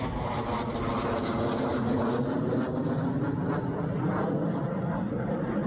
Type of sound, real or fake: real